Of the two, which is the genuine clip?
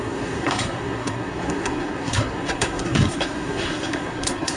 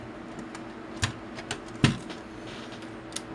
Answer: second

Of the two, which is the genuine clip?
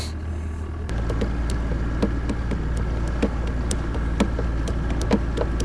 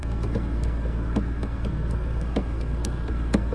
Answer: first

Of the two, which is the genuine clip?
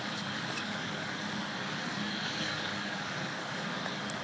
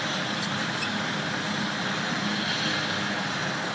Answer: second